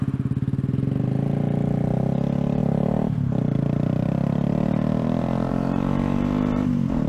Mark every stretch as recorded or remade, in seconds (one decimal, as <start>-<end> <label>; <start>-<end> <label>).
0.0-2.6 recorded; 2.6-7.1 remade